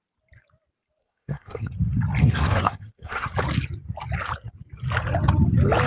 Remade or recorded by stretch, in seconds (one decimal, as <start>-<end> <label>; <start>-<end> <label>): 0.0-1.0 recorded; 1.0-1.7 remade; 1.7-2.2 recorded; 2.2-3.3 remade; 3.3-5.9 recorded